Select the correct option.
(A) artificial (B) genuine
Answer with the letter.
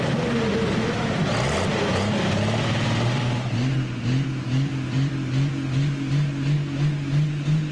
B